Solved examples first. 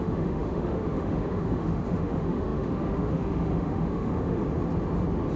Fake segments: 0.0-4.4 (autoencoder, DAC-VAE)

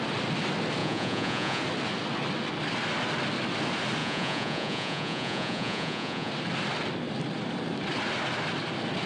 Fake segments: 0.8-1.6 (vocoder, Vocos); 4.0-6.3

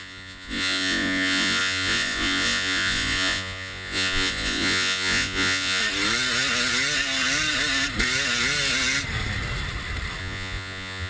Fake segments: 0.0-5.8 (vocoder, Vocos); 10.2-11.1

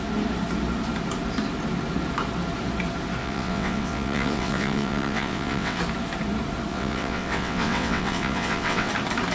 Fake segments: 3.2-5.8 (vocoder, WaveNeXt); 6.7-8.9